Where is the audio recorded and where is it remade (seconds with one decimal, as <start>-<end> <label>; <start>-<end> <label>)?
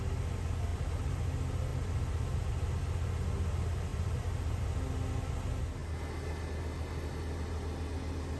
0.0-0.7 recorded; 0.7-1.2 remade; 1.2-1.7 recorded; 1.7-2.5 remade; 2.5-3.9 recorded; 3.9-4.6 remade; 4.6-8.4 recorded